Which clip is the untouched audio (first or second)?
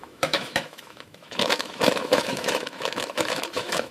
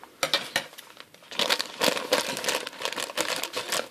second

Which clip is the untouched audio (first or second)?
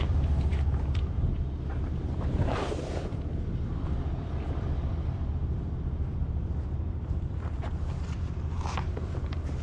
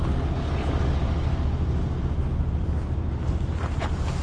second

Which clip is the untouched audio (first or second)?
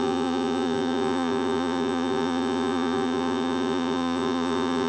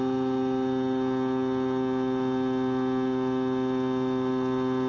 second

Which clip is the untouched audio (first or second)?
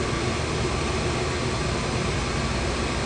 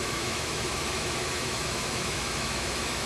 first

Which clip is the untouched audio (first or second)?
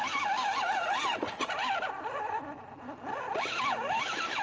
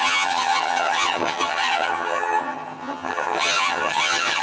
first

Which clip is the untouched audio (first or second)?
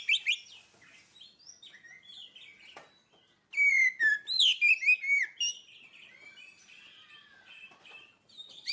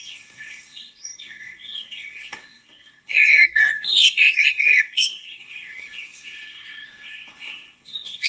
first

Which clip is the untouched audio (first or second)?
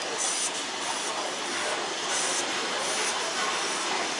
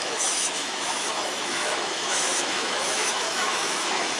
first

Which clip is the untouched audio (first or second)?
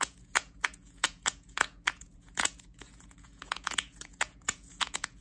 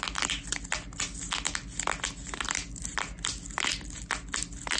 second